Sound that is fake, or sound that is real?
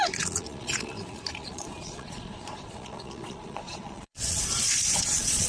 fake